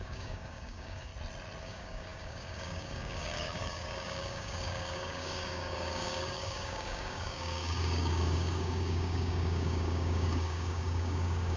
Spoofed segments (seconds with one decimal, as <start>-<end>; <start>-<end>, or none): 0.0-1.1; 1.6-11.6

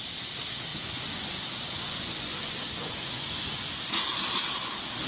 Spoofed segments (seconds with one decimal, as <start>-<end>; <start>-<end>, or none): 0.7-3.8

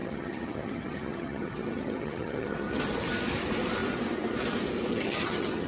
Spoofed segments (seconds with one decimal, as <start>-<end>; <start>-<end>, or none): 0.0-2.8; 4.9-5.7

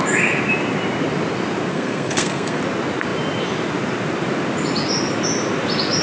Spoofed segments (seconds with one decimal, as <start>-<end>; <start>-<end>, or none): 1.7-2.6

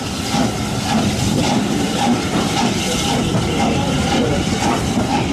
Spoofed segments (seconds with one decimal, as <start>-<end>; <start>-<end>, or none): 1.4-3.2

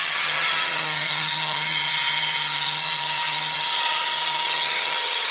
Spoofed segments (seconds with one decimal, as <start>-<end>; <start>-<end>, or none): 0.0-5.3

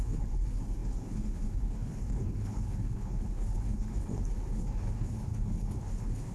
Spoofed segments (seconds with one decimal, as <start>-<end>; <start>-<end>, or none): 0.0-6.3